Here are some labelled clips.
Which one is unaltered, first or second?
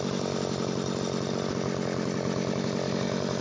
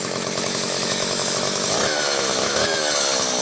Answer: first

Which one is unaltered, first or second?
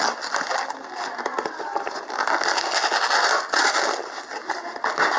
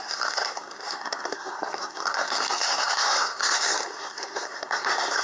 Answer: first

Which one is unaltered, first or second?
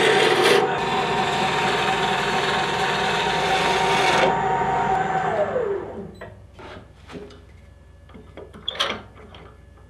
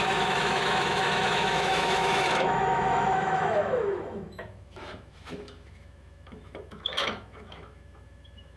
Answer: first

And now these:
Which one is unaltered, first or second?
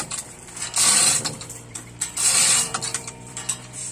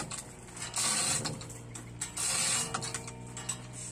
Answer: second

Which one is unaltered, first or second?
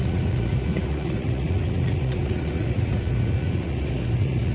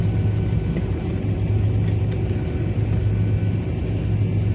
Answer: second